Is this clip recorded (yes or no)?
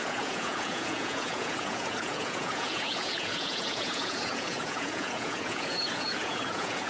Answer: no